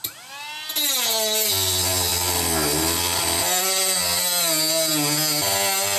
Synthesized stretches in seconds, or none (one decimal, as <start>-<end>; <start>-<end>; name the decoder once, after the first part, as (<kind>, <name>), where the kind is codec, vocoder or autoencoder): none